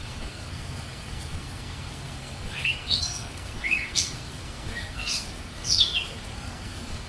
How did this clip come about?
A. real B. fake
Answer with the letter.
B